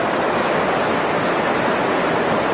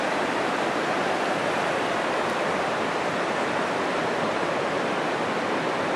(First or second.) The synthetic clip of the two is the second